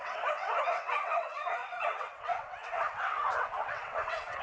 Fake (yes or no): yes